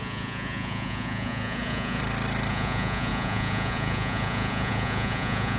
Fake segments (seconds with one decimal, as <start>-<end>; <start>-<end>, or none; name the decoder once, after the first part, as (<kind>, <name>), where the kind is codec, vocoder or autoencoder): 0.0-2.0 (vocoder, Vocos); 2.5-5.6